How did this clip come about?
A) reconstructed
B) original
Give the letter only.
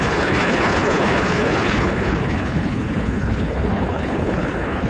A